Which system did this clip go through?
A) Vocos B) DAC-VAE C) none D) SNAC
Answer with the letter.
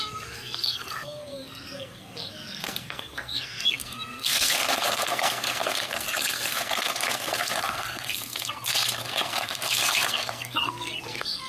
D